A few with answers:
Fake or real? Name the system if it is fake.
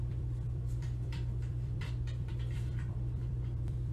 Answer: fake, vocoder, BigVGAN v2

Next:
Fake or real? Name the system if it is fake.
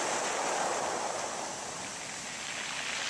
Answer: real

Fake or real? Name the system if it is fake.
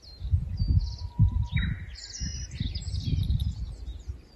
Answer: real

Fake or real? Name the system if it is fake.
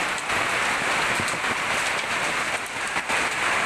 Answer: real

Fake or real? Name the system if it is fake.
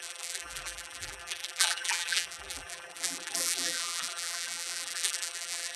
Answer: fake, vocoder, BigVGAN v2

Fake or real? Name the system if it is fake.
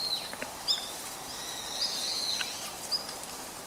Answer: real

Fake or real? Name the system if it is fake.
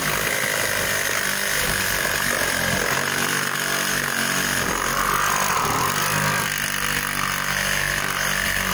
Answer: fake, vocoder, BigVGAN v2